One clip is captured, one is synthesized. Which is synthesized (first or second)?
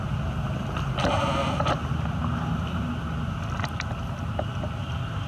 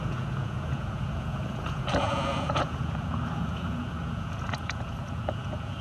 second